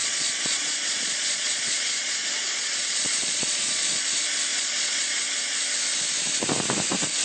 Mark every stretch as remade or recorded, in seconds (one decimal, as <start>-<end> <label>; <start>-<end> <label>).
0.0-4.0 remade; 4.0-4.5 recorded; 4.5-5.2 remade; 5.2-7.2 recorded